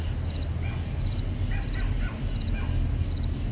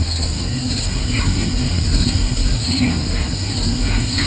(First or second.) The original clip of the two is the first